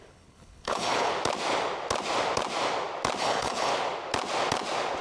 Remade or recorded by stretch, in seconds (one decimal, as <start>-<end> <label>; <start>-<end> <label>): 0.0-1.1 remade; 1.1-3.2 recorded; 3.2-3.7 remade; 3.7-5.0 recorded

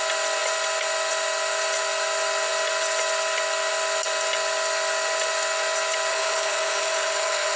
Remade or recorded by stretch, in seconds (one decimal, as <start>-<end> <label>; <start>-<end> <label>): 0.0-6.1 recorded; 6.1-7.6 remade

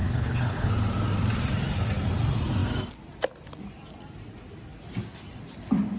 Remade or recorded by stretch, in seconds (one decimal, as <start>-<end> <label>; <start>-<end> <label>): 0.0-0.7 remade; 0.7-6.0 recorded